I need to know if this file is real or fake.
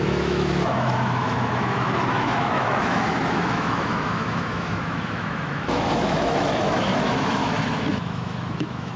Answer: fake